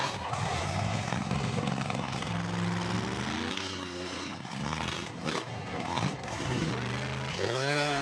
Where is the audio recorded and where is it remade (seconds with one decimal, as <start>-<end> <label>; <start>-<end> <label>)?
0.0-2.3 remade; 2.3-3.5 recorded; 3.5-6.7 remade; 6.7-7.3 recorded; 7.3-8.0 remade